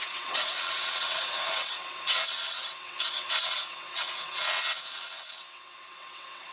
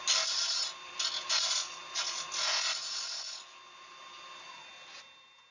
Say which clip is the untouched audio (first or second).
second